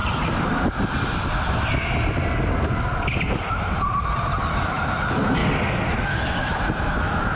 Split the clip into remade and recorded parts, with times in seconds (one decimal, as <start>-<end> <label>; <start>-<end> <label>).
0.0-4.4 recorded; 4.4-5.4 remade; 5.4-6.0 recorded; 6.0-7.4 remade